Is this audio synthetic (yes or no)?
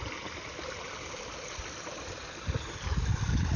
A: no